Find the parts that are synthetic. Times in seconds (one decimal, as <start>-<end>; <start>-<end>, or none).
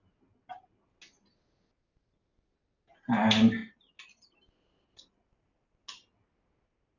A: none